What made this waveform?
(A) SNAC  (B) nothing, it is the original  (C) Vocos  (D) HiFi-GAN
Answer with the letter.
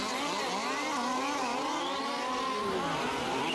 B